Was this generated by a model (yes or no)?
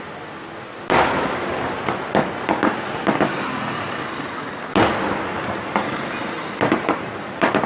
no